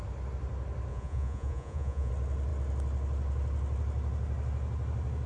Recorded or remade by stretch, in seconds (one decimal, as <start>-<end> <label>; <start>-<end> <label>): 0.0-0.9 recorded; 0.9-2.1 remade; 2.1-5.3 recorded